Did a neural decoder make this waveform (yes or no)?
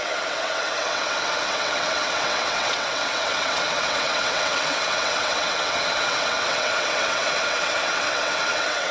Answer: yes